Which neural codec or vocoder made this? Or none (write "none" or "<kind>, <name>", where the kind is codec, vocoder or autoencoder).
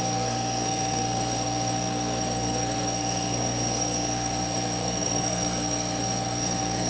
codec, SNAC